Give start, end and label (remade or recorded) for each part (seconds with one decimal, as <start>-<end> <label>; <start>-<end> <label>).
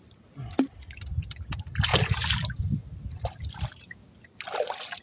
0.0-5.0 recorded